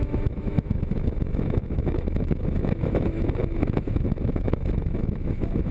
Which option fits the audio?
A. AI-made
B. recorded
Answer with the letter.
A